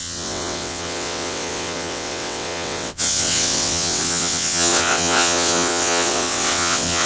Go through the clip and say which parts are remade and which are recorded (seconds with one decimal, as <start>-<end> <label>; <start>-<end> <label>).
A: 0.0-7.1 remade